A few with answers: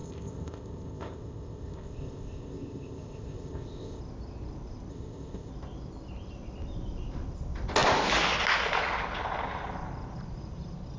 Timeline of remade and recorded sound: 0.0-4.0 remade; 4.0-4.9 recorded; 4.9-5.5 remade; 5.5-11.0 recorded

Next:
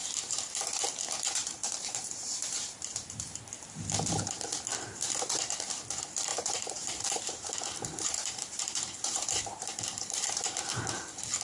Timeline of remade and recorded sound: 0.0-0.6 remade; 0.6-1.4 recorded; 1.4-3.4 remade; 3.4-4.7 recorded; 4.7-5.4 remade; 5.4-6.3 recorded; 6.3-10.6 remade; 10.6-11.4 recorded